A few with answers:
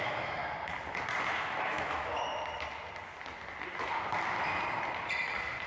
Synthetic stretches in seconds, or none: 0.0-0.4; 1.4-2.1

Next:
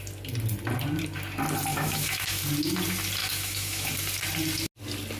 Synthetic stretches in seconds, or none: 1.7-2.4; 3.2-3.9

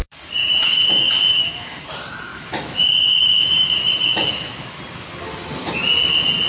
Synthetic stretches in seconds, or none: 0.4-1.7; 2.3-4.8